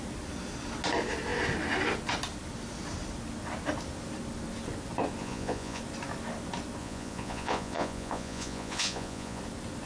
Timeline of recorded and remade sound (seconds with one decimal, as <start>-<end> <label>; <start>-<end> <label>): 0.0-5.2 recorded; 5.2-5.8 remade; 5.8-6.8 recorded; 6.8-9.4 remade; 9.4-9.9 recorded